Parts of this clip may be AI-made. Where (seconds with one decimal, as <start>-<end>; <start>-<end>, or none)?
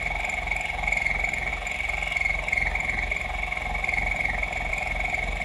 none